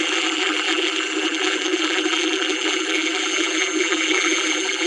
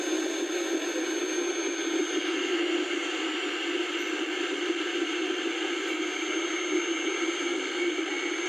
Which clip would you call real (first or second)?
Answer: second